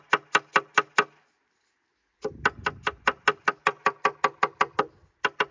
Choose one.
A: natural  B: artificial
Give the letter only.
A